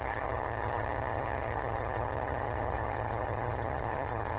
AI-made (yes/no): yes